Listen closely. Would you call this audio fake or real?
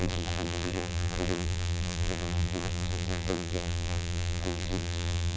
fake